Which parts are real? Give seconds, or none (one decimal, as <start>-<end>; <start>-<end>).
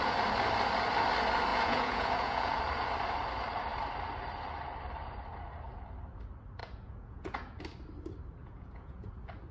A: 0.0-1.5; 2.6-6.6; 7.6-8.4; 9.1-9.5